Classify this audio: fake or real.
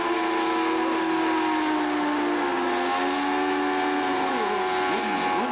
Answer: real